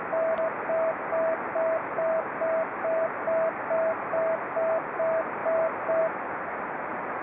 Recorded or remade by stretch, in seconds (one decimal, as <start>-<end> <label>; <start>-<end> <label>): 0.0-7.2 recorded